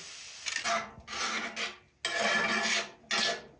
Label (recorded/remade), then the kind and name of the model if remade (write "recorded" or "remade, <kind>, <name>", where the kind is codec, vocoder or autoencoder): recorded